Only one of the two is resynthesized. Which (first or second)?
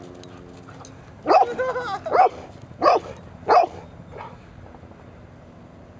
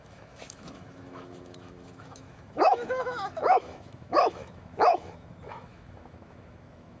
second